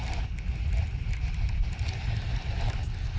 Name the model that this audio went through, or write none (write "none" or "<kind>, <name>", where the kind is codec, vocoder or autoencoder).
none